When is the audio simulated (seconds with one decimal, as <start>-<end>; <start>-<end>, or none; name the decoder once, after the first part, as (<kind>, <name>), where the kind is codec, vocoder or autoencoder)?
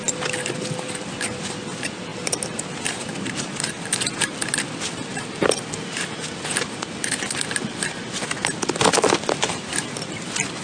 none